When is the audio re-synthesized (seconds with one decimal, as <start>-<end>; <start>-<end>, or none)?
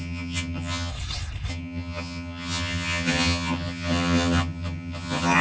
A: 0.0-0.9; 1.5-5.4